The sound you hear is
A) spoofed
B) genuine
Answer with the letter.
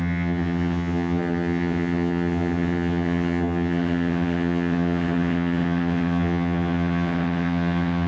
A